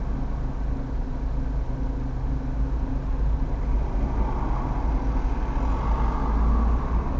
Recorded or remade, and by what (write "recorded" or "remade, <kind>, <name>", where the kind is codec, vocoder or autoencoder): recorded